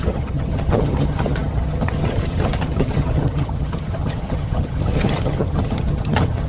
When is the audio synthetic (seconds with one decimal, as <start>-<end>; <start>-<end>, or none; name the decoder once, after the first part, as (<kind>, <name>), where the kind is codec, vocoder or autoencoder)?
0.0-6.5 (vocoder, HiFi-GAN)